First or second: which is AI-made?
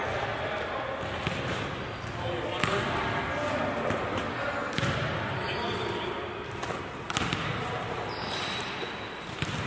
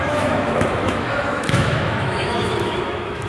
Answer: second